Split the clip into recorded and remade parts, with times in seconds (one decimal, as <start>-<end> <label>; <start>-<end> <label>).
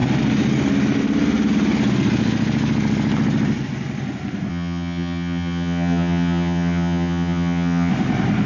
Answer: 0.0-4.5 recorded; 4.5-7.9 remade; 7.9-8.5 recorded